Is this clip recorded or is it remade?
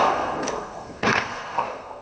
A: remade